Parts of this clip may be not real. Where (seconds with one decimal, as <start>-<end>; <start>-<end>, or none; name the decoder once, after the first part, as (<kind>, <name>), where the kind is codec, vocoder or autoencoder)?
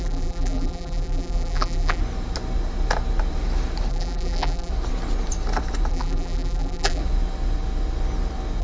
0.0-2.0 (vocoder, BigVGAN v2); 3.9-4.7; 5.9-7.0